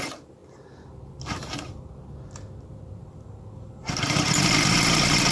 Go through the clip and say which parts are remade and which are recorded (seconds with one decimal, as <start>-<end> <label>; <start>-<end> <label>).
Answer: 0.0-5.3 recorded